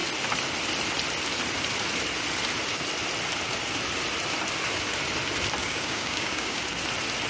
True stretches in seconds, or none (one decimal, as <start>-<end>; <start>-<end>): 0.0-5.6; 6.6-7.3